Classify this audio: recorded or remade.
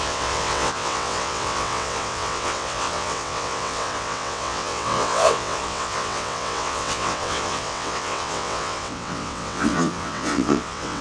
remade